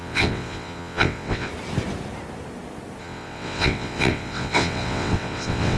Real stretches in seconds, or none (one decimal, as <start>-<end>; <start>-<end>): 1.5-3.0